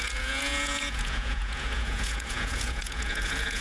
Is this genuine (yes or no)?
no